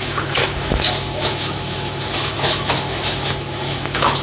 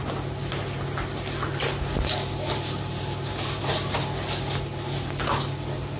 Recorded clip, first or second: second